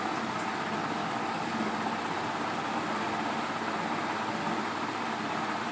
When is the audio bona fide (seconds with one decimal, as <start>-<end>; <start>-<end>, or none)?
0.0-1.0; 1.7-5.7